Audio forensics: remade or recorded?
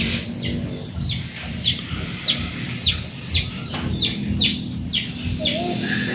recorded